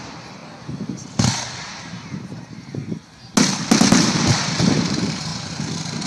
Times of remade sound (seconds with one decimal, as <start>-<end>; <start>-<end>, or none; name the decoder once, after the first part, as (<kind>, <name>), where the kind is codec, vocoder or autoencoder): 0.0-0.4 (vocoder, BigVGAN v2); 1.6-2.8; 4.7-5.3